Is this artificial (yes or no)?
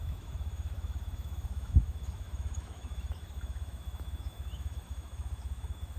yes